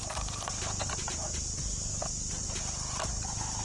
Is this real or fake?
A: real